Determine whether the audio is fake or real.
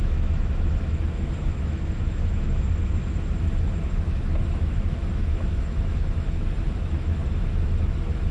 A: fake